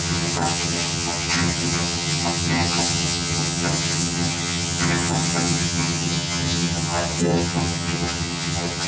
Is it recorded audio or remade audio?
remade